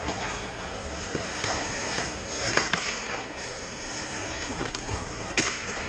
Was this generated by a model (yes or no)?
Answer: yes